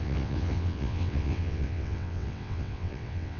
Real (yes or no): no